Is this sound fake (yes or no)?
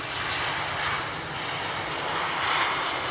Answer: no